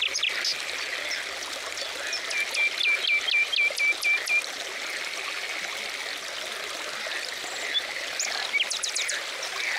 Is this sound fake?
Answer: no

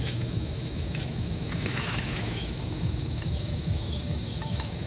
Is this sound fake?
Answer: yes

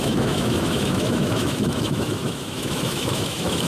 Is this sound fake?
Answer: yes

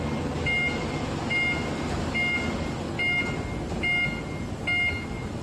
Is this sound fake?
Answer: no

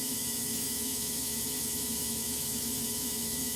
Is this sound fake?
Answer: yes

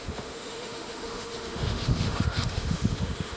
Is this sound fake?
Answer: yes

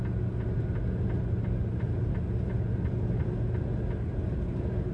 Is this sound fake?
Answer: no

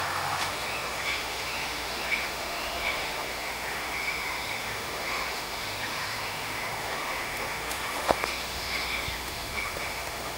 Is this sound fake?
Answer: yes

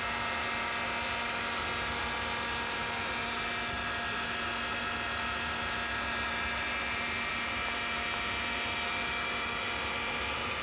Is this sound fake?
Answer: no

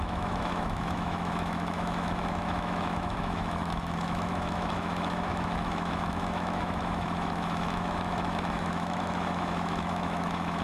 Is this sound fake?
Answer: yes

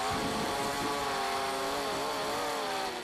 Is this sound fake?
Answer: no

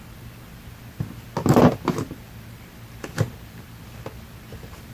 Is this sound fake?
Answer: no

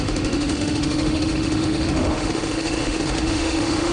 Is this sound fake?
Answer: yes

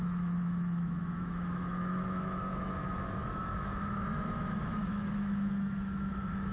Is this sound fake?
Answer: yes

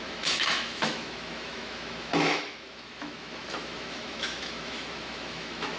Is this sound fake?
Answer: yes